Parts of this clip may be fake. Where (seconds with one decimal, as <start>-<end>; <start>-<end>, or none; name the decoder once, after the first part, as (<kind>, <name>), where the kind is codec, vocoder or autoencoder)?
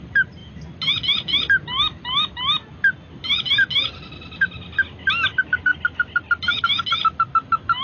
none